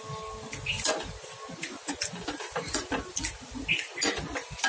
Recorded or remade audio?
recorded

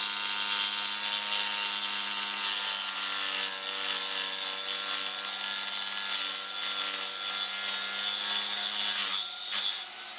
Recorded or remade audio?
recorded